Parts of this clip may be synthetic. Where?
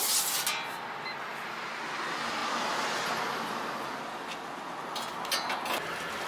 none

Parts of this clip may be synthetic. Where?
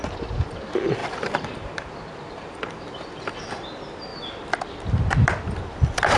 1.0-3.4 (vocoder, BigVGAN v2)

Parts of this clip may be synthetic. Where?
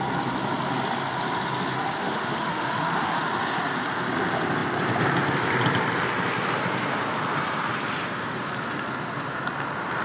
2.0-3.2 (autoencoder, DAC-VAE)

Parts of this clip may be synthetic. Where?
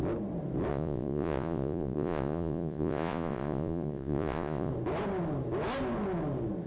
0.7-4.7 (vocoder, Vocos)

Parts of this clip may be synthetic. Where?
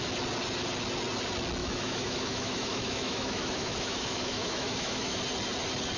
1.6-5.2 (autoencoder, DAC-VAE)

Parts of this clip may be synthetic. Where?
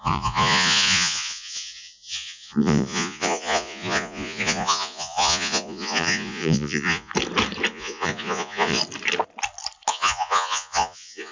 0.0-7.1 (vocoder, Vocos); 7.7-8.8; 9.9-11.3